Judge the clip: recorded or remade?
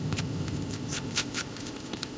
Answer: remade